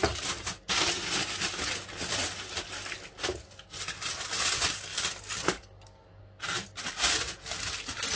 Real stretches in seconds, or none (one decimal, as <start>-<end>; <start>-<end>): 0.0-8.2